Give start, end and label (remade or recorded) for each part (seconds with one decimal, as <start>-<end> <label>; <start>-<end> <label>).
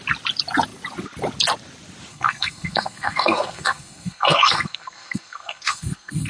0.0-2.1 recorded; 2.1-6.3 remade